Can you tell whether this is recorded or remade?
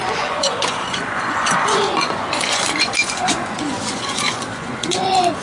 remade